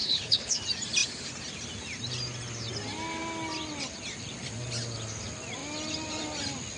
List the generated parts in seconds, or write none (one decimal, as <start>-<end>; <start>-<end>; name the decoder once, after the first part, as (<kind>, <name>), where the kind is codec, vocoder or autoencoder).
0.0-0.6 (codec, HILCodec)